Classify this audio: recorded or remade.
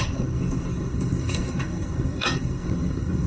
remade